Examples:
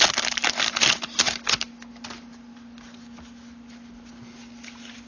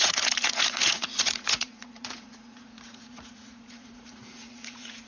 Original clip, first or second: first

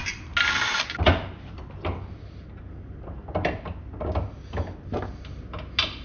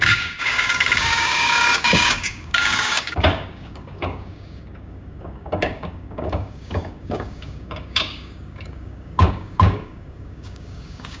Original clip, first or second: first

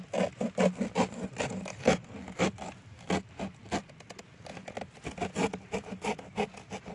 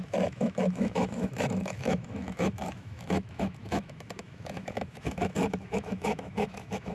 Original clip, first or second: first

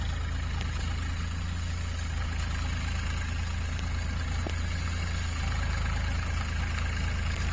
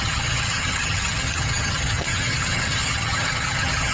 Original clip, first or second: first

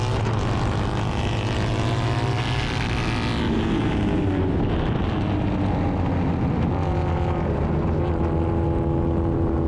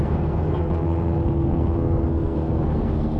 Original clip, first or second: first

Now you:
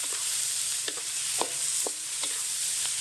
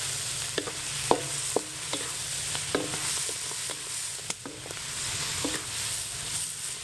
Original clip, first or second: second